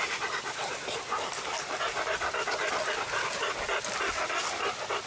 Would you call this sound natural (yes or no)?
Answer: yes